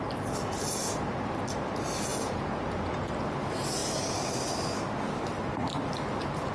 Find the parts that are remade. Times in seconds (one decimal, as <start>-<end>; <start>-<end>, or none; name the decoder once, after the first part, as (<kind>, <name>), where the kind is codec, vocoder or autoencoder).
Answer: 2.1-3.1 (vocoder, Vocos)